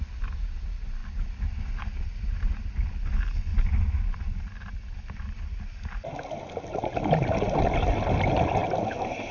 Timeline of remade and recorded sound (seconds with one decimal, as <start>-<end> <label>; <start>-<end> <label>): 0.0-9.3 recorded